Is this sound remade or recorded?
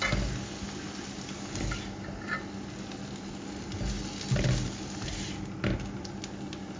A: recorded